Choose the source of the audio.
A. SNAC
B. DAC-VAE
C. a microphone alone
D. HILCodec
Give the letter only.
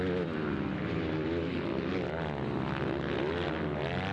C